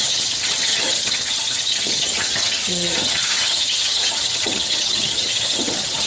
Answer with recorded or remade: remade